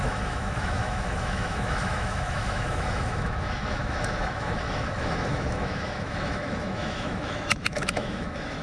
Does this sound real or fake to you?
fake